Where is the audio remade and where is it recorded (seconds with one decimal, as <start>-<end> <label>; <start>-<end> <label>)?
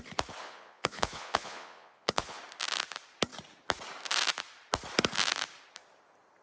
0.0-0.4 recorded; 0.4-2.4 remade; 2.4-6.4 recorded